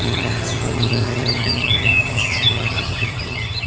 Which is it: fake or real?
fake